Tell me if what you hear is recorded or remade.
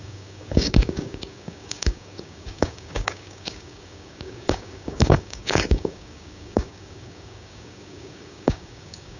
remade